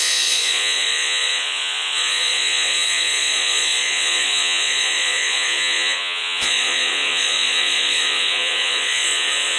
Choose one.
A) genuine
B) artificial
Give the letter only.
B